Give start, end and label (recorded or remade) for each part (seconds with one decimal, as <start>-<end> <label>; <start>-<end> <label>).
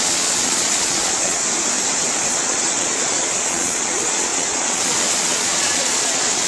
0.0-1.4 remade; 1.4-2.3 recorded; 2.3-6.5 remade